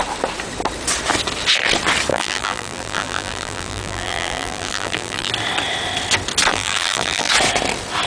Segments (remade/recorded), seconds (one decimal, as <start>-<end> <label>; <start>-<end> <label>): 0.0-2.1 recorded; 2.1-5.3 remade; 5.3-6.5 recorded; 6.5-7.3 remade; 7.3-8.1 recorded